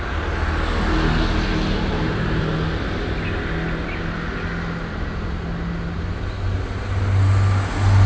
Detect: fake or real real